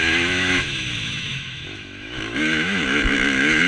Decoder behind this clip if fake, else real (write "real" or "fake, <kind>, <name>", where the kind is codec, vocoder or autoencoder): fake, autoencoder, DAC-VAE